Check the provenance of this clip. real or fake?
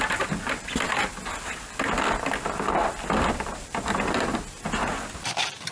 real